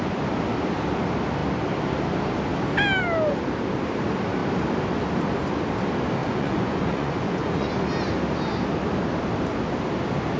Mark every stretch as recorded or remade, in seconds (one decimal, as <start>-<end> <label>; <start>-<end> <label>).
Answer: 0.0-6.2 recorded; 6.2-7.7 remade; 7.7-10.4 recorded